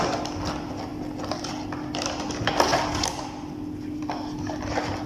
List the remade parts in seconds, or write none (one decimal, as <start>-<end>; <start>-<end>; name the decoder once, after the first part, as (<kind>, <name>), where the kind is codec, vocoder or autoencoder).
none